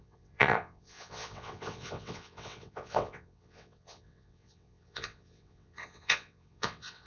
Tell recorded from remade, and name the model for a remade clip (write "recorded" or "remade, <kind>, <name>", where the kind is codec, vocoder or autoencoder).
remade, vocoder, WaveNeXt